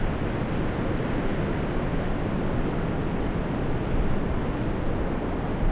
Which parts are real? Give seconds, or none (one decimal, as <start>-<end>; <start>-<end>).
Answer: 0.0-5.7